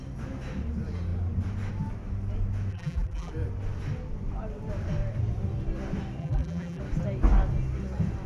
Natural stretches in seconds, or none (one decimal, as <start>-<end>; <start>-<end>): 0.0-2.7; 3.3-6.2; 6.8-8.3